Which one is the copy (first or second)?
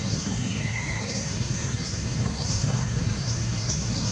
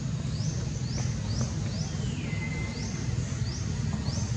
first